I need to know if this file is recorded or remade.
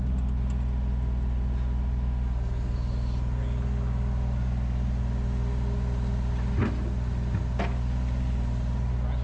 recorded